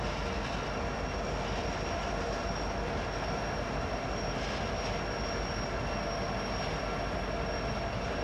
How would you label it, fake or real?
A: real